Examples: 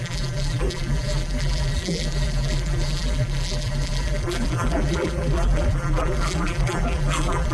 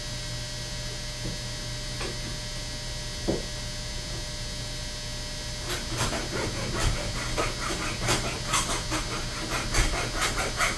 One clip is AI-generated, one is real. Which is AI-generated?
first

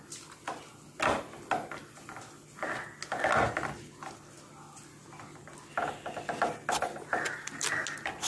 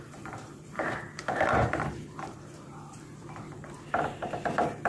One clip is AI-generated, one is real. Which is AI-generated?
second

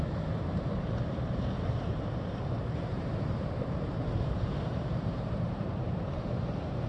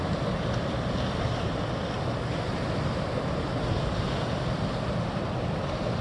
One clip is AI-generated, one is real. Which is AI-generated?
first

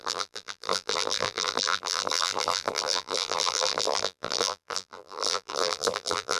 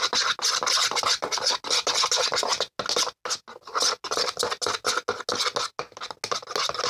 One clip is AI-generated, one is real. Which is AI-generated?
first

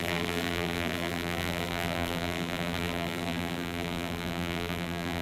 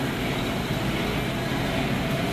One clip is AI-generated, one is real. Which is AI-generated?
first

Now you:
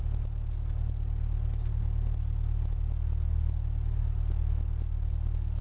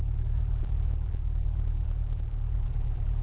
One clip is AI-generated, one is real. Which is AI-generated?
second